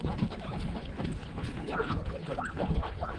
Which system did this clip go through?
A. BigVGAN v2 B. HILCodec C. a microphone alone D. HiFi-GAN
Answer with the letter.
B